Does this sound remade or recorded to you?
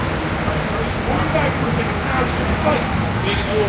recorded